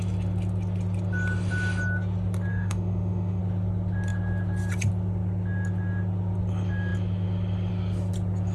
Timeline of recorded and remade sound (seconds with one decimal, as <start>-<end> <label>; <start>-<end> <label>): 0.0-2.5 recorded; 2.5-3.4 remade; 3.4-8.5 recorded

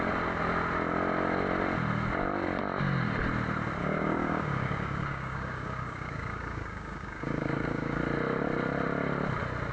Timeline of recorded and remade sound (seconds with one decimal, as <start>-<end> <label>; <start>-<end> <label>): 0.0-3.8 recorded; 3.8-8.0 remade; 8.0-9.7 recorded